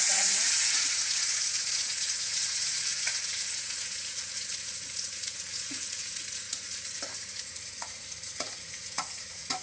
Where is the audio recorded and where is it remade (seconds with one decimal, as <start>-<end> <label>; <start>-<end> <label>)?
0.0-9.6 remade